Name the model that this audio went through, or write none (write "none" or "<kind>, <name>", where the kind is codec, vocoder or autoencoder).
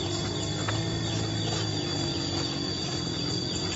none